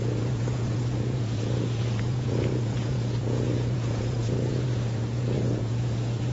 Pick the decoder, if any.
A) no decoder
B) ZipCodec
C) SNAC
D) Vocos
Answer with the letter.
D